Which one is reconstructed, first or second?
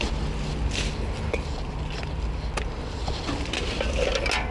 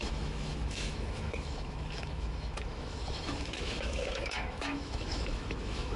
second